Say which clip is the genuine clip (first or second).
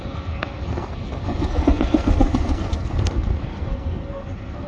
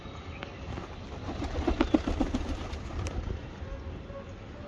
second